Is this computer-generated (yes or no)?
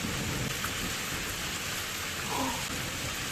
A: no